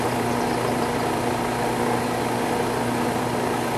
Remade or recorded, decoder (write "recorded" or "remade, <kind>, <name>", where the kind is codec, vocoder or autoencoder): recorded